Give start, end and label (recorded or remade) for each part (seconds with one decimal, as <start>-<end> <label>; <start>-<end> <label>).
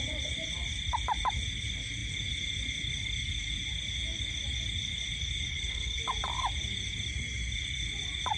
0.0-5.5 recorded; 5.5-6.0 remade; 6.0-8.4 recorded